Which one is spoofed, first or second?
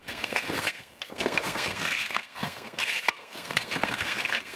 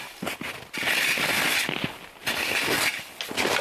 first